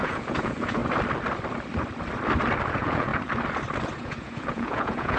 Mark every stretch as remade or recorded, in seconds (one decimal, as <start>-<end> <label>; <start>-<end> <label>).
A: 0.0-0.8 remade; 0.8-2.7 recorded; 2.7-3.1 remade; 3.1-4.0 recorded; 4.0-5.2 remade